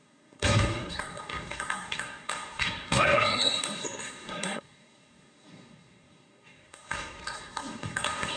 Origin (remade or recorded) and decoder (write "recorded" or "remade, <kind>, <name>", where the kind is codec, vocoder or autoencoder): remade, codec, SNAC